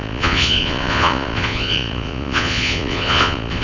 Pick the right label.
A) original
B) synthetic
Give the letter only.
B